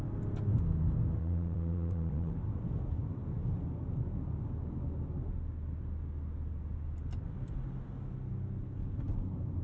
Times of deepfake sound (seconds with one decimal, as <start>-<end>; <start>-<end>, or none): 1.2-2.3